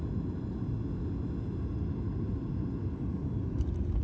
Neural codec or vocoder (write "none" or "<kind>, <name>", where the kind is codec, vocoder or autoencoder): none